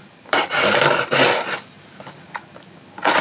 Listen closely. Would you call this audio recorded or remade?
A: recorded